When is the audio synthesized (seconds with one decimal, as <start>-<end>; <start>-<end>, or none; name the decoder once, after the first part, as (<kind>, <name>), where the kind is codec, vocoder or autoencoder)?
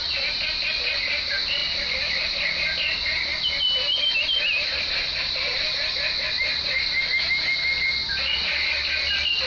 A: none